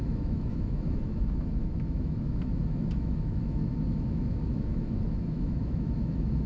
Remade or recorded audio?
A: remade